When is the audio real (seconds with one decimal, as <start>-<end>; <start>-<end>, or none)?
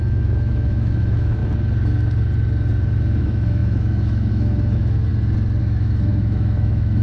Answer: 1.4-3.2; 5.1-5.6